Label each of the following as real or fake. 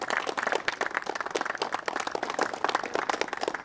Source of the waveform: real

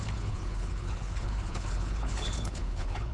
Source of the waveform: fake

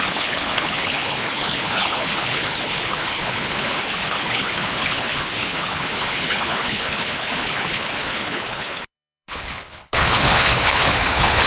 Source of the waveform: fake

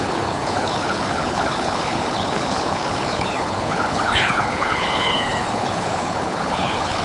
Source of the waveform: fake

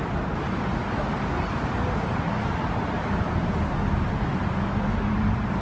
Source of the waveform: real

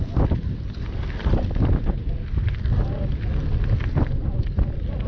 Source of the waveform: real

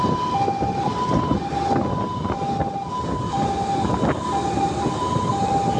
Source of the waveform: real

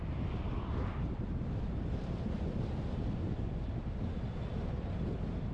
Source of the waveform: real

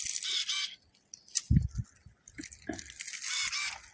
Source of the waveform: real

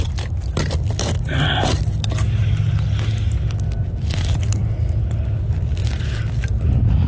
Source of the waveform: real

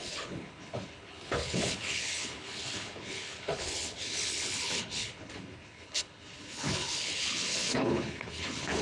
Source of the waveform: fake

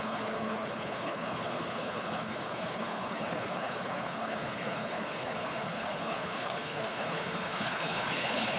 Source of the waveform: fake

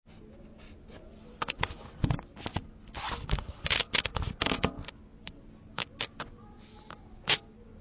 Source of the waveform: real